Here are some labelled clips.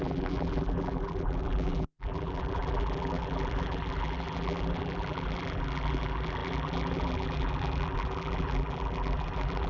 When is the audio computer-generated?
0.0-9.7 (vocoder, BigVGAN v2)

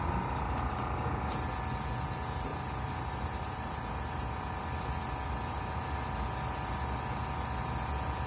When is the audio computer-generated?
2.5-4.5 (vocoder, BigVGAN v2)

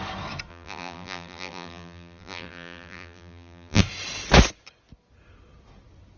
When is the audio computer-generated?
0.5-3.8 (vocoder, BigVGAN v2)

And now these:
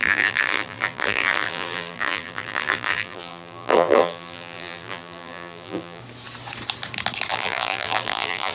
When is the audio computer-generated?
0.0-6.0 (vocoder, BigVGAN v2); 7.3-8.5

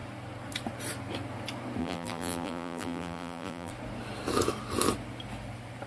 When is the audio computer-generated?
1.8-3.7 (vocoder, BigVGAN v2)

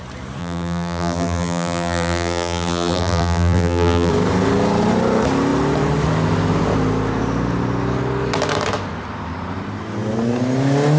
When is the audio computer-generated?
0.4-4.1 (vocoder, BigVGAN v2)